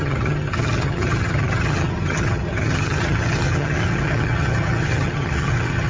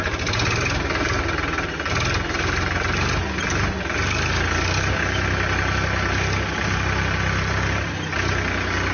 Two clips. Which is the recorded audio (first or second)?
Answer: second